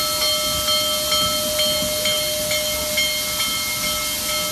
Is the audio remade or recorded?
recorded